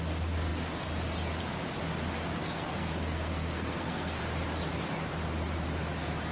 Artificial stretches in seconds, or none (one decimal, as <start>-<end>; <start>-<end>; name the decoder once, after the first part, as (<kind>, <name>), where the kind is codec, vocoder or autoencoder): 2.4-4.2 (codec, SNAC)